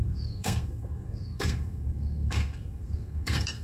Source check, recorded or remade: remade